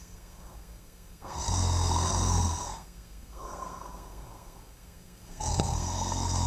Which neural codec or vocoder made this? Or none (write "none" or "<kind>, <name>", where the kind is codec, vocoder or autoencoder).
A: codec, SNAC